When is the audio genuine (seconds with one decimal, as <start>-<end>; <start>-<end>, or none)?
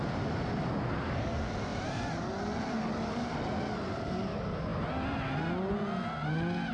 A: 0.0-1.7; 2.3-6.7